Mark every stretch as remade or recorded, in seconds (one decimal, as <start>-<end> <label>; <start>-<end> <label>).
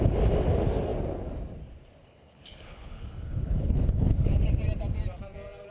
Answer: 0.0-2.0 recorded; 2.0-4.3 remade; 4.3-5.7 recorded